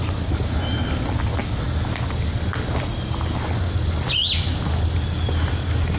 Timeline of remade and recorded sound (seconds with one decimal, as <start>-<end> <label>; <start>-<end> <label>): 0.0-6.0 recorded